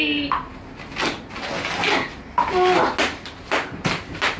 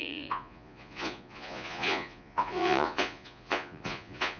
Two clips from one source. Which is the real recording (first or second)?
first